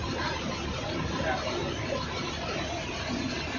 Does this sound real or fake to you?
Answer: real